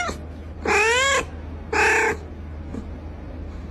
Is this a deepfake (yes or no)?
no